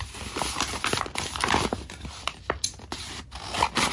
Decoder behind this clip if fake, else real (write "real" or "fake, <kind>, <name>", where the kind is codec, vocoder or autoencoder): real